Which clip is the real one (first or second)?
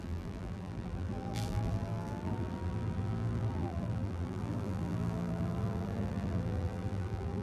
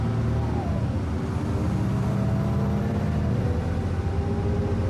second